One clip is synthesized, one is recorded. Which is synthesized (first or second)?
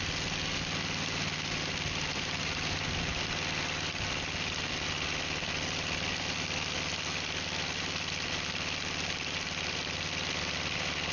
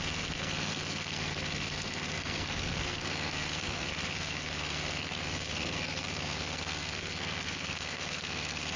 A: second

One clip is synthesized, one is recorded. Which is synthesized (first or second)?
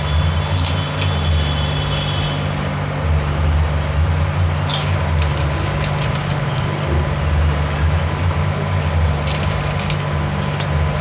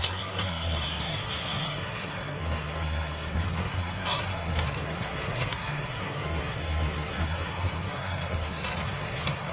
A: second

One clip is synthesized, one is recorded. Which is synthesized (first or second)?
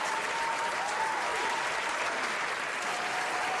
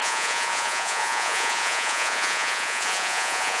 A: second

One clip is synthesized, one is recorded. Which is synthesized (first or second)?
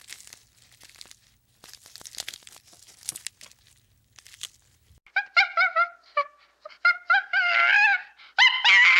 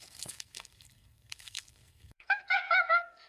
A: second